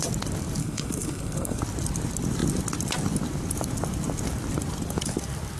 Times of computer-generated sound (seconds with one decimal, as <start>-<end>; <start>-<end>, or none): 0.6-1.6